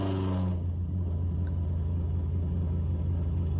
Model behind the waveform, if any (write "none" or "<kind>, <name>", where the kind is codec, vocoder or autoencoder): none